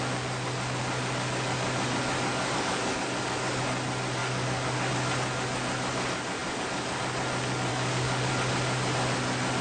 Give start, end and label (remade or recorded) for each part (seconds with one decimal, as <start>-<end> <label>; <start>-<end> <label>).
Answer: 0.0-2.3 recorded; 2.3-3.6 remade; 3.6-4.2 recorded; 4.2-4.9 remade; 4.9-7.7 recorded; 7.7-8.3 remade; 8.3-9.6 recorded